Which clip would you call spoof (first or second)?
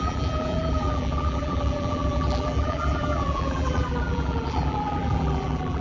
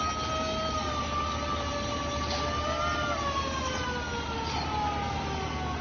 first